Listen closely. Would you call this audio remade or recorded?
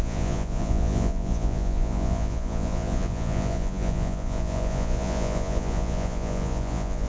remade